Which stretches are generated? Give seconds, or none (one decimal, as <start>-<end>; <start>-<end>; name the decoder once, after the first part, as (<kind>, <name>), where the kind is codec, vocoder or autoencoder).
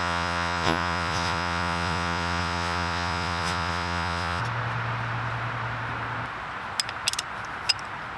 0.0-4.4 (vocoder, Vocos)